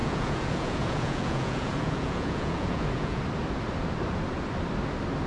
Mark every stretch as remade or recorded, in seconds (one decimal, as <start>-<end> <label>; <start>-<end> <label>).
0.0-3.2 remade; 3.2-5.3 recorded